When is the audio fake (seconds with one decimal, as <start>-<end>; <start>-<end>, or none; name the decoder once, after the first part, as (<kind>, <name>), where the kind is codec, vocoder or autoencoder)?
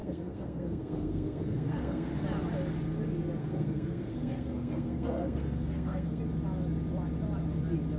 0.0-2.1 (codec, SNAC); 3.4-6.2